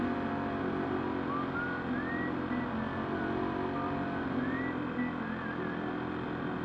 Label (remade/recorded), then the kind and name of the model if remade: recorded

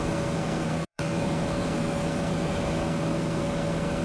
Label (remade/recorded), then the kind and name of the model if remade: remade, codec, SNAC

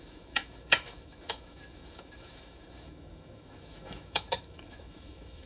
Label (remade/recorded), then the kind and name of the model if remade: remade, autoencoder, DAC-VAE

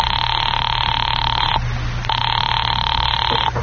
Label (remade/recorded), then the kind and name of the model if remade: recorded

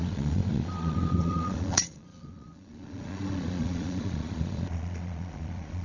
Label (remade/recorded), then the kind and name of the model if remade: remade, vocoder, Vocos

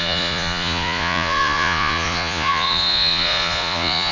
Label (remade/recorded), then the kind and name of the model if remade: remade, vocoder, Vocos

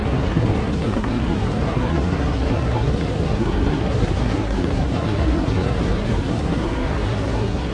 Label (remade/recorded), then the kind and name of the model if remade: remade, codec, SNAC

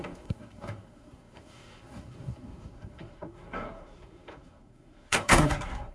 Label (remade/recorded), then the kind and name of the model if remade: remade, codec, SNAC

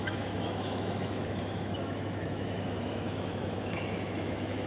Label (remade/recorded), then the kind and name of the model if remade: remade, autoencoder, DAC-VAE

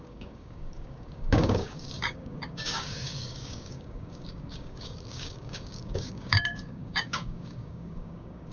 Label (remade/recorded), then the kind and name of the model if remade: remade, codec, DAC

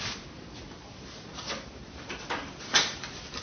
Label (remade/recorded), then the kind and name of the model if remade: recorded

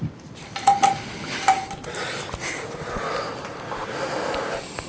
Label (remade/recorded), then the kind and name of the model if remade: recorded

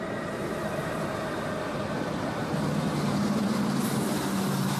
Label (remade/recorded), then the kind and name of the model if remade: recorded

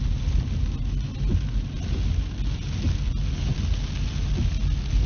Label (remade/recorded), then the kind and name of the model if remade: recorded